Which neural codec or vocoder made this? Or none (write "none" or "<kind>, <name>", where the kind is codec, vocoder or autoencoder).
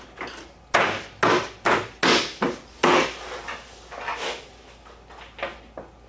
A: none